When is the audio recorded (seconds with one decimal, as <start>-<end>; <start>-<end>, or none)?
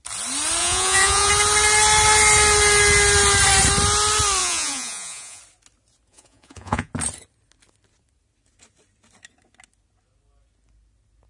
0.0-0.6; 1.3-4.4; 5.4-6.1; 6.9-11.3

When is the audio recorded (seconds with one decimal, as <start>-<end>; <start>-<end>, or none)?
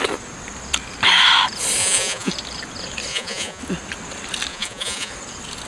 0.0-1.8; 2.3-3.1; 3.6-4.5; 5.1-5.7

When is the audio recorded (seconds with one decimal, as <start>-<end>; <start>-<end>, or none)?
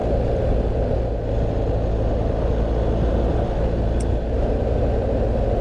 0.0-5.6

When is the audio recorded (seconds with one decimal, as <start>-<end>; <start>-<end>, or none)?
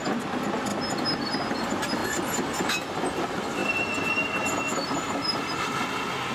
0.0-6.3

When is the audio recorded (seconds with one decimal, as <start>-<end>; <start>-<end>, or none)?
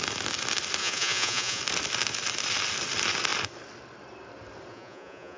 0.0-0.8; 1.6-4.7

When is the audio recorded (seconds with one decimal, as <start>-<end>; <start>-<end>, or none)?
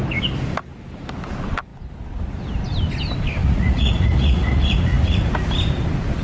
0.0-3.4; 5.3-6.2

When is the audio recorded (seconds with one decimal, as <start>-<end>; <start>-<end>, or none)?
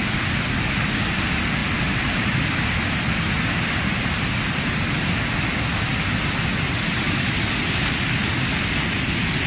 0.0-9.5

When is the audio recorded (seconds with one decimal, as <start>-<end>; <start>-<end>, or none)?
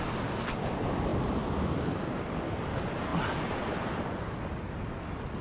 0.0-5.4